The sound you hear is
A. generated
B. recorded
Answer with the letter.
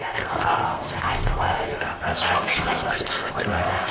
A